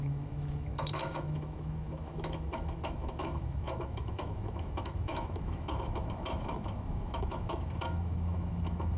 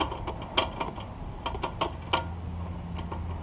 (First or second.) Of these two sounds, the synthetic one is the first